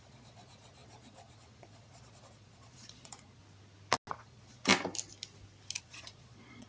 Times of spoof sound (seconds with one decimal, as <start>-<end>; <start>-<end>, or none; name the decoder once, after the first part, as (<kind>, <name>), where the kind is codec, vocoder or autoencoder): 0.0-3.4 (vocoder, Vocos); 4.1-4.7; 5.8-6.7